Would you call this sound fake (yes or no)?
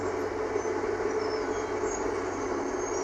no